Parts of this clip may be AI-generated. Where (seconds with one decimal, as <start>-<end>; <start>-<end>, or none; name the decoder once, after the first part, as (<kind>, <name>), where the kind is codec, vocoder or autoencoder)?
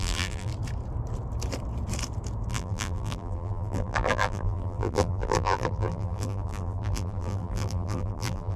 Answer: 0.0-0.5 (vocoder, BigVGAN v2); 2.5-8.6